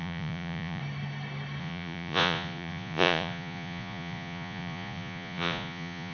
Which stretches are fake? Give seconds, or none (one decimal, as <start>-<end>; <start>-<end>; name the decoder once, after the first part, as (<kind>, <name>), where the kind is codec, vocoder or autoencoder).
0.0-0.8 (vocoder, Vocos); 1.6-6.1